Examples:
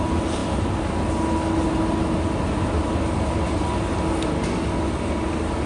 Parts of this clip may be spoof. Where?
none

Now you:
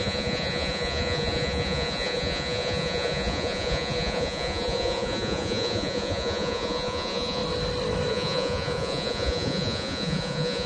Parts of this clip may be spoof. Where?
0.0-7.4 (vocoder, Vocos); 8.1-10.7

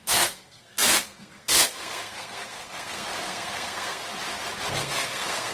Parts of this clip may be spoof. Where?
0.0-4.0 (codec, SNAC); 4.7-5.5

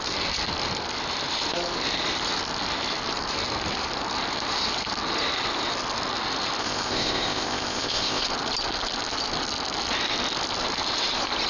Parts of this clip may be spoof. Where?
6.6-8.2 (codec, ZipCodec)